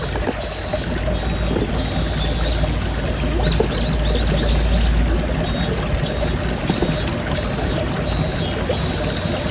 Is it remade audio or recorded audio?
recorded